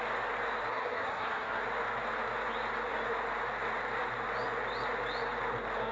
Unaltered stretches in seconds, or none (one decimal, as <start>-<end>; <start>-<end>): 0.0-0.7; 1.6-5.9